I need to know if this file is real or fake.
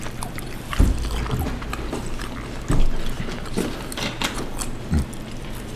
real